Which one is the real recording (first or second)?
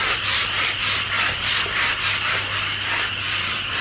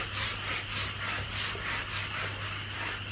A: second